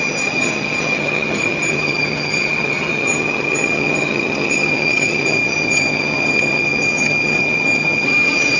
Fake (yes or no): yes